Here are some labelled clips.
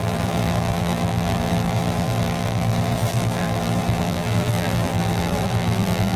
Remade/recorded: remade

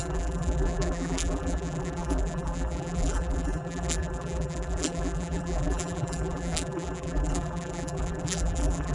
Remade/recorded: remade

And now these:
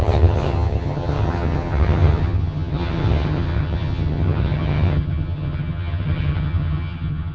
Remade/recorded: remade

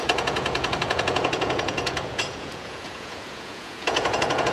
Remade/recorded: remade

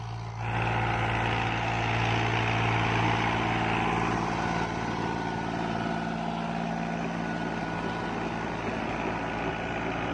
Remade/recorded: recorded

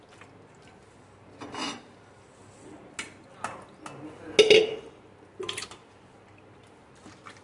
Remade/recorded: recorded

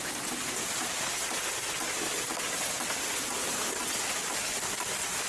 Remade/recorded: recorded